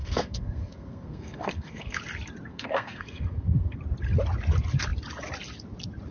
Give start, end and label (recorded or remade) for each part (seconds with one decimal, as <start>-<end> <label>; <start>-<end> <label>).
0.0-2.0 remade; 2.0-2.5 recorded; 2.5-3.8 remade; 3.8-6.1 recorded